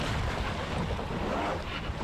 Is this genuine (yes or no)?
yes